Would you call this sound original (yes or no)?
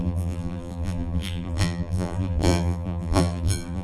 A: no